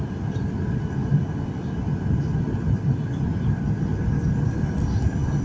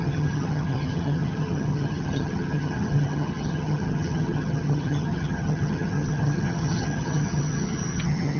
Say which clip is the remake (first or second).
second